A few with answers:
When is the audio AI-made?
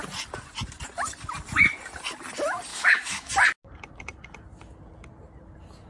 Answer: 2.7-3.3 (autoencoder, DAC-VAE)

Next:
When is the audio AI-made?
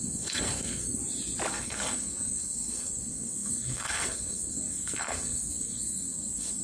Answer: 0.0-1.0 (codec, SNAC); 1.5-6.6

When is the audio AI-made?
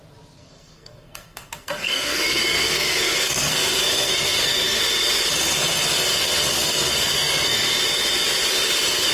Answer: 0.4-4.8 (codec, SNAC); 6.5-7.6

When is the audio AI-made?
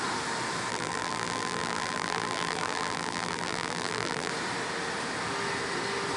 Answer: 0.7-4.3 (vocoder, BigVGAN v2)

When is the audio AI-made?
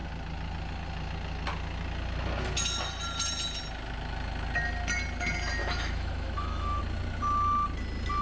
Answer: 5.6-6.8 (autoencoder, DAC-VAE)